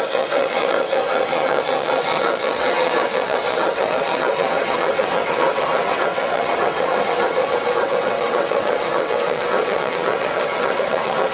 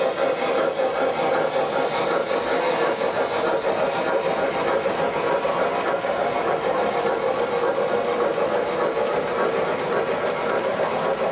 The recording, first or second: second